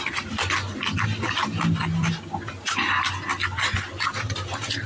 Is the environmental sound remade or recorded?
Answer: recorded